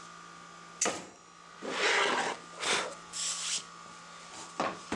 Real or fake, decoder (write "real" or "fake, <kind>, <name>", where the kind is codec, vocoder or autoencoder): real